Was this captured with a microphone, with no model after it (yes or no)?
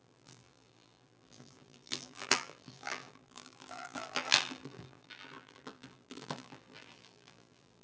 no